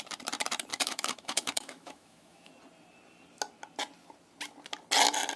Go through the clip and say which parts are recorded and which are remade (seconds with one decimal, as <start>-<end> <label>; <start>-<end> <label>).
0.0-0.7 recorded; 0.7-2.5 remade; 2.5-5.4 recorded